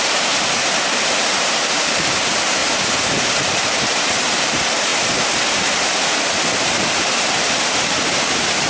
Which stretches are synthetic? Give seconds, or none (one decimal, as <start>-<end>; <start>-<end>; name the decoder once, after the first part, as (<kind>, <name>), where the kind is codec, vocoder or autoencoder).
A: 0.0-2.6 (vocoder, BigVGAN v2); 3.2-4.9; 6.6-8.7